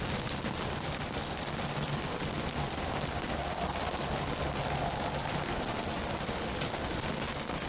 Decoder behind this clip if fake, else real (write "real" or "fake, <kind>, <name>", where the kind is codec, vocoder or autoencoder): real